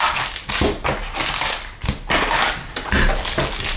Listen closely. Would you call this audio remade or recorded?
recorded